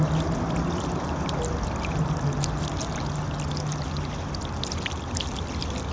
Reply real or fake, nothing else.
real